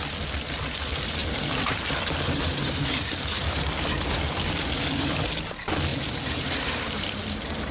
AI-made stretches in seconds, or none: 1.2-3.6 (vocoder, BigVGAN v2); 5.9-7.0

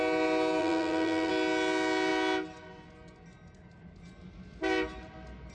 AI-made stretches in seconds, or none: 0.6-1.3 (vocoder, BigVGAN v2)